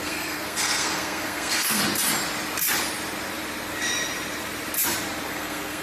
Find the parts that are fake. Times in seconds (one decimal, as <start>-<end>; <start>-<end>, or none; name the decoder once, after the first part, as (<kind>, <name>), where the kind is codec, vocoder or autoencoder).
0.0-1.8 (codec, SNAC); 5.3-5.8